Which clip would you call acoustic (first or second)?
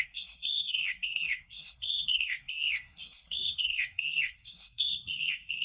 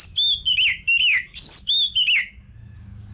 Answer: second